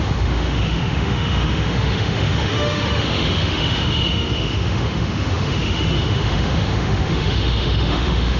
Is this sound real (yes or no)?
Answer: no